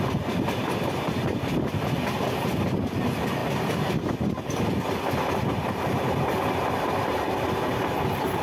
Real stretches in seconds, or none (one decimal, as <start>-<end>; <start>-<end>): 0.0-8.4